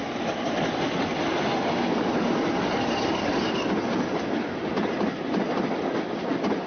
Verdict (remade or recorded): recorded